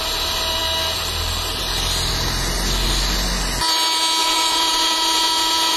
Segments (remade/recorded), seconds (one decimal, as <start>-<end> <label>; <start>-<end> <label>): 0.0-4.2 recorded; 4.2-5.8 remade

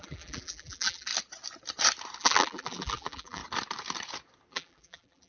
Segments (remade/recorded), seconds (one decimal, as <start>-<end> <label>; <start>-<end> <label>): 0.0-1.1 remade; 1.1-2.2 recorded; 2.2-3.4 remade; 3.4-4.5 recorded; 4.5-5.3 remade